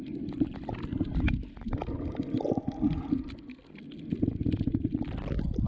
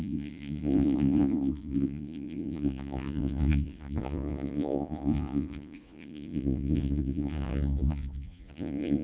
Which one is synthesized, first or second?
second